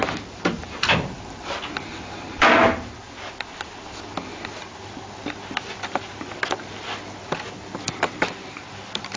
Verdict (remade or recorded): recorded